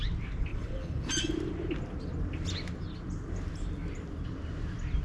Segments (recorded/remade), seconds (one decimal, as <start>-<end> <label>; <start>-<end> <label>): 0.0-0.5 recorded; 0.5-1.1 remade; 1.1-5.0 recorded